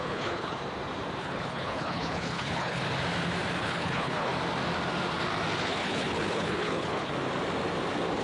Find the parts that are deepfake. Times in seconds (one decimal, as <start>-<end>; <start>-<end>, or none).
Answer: 0.0-0.6; 1.2-2.8; 3.6-4.3; 5.6-7.1